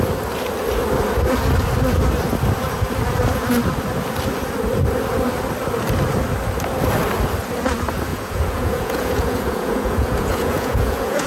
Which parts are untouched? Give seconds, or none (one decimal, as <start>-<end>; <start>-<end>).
0.0-8.1